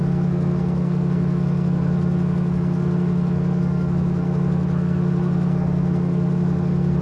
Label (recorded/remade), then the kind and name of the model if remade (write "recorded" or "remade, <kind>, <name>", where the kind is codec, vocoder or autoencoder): remade, codec, SNAC